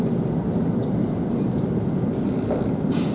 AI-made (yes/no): no